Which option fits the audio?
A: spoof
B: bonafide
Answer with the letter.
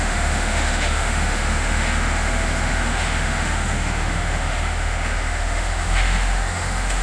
A